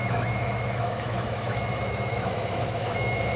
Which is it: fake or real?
fake